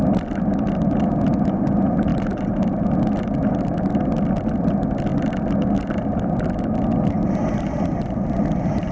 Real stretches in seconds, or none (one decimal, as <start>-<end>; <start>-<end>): 5.1-7.8